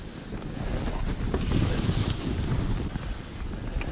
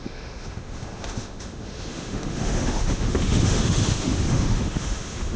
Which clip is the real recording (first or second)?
first